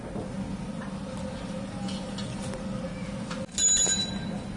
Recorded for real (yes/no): yes